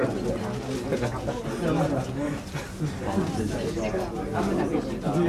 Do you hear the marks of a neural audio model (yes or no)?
no